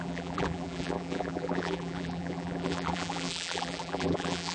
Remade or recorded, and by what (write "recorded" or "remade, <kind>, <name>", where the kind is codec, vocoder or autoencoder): remade, vocoder, BigVGAN v2